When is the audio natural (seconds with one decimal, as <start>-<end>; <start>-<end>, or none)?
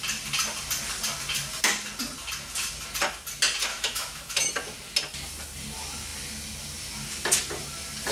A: 0.0-3.7; 4.5-8.1